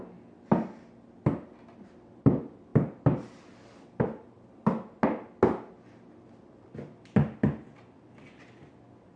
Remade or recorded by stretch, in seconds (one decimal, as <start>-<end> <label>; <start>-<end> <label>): 0.0-9.2 recorded